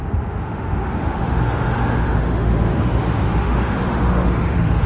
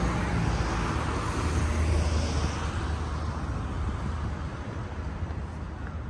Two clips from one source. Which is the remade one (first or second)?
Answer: first